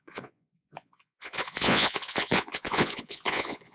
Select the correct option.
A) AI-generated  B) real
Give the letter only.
A